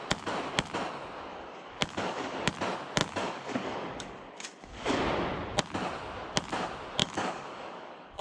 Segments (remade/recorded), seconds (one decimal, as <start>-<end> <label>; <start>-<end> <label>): 0.0-1.3 recorded; 1.3-2.5 remade; 2.5-3.0 recorded; 3.0-5.0 remade; 5.0-7.0 recorded; 7.0-8.2 remade